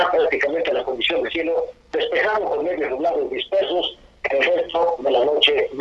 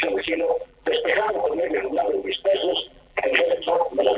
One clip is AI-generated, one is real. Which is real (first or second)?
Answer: first